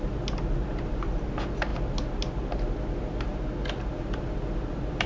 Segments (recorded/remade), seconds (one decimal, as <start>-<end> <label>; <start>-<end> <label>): 0.0-5.1 recorded